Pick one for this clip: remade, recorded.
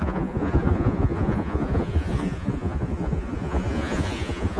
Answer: remade